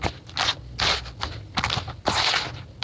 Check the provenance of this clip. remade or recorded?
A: recorded